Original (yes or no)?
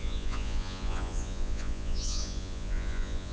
no